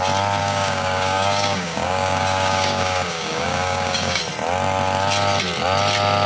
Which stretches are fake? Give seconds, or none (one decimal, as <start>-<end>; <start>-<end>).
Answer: 0.4-4.2